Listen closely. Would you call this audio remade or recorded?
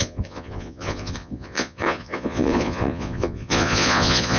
remade